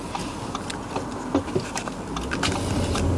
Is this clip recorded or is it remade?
recorded